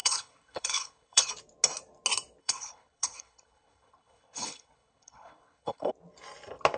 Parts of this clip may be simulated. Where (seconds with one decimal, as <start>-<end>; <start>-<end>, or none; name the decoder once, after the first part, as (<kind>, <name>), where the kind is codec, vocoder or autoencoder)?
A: 0.0-1.3 (codec, HILCodec); 2.4-5.9